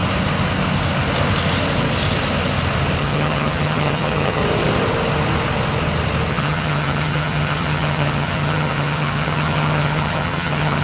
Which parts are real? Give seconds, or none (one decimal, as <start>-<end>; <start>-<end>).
0.0-3.0; 4.4-6.3